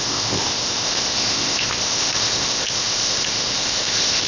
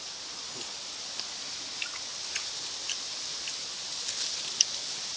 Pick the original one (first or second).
second